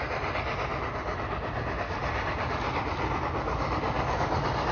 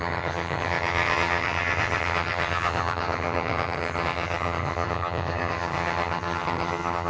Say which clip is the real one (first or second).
first